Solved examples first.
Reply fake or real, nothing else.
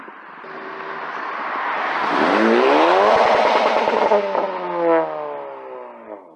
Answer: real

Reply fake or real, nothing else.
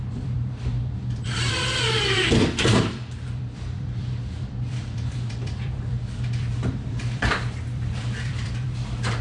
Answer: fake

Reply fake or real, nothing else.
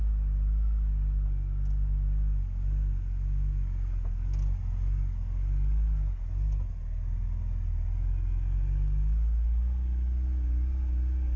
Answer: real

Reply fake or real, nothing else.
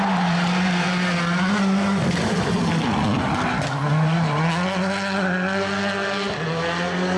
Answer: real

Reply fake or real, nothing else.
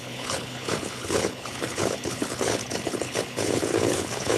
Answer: fake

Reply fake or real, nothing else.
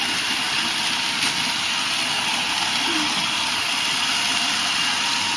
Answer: real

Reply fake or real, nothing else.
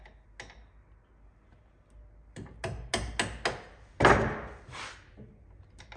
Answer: real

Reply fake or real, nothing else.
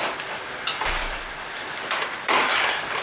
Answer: fake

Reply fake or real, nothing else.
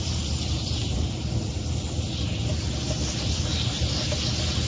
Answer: real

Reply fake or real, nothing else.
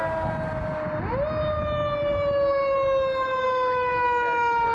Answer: real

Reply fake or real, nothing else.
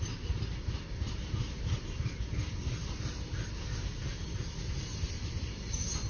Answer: real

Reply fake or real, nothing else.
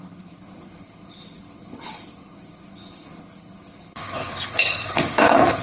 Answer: fake